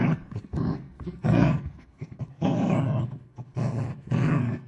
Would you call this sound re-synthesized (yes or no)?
yes